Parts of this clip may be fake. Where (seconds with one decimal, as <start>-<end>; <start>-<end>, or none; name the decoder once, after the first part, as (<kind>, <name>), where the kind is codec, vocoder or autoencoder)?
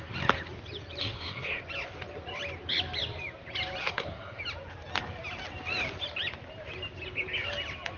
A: 1.0-1.6 (codec, SNAC); 3.8-4.4